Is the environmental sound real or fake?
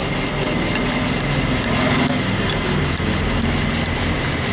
real